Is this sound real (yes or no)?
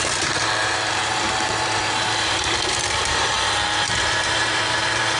no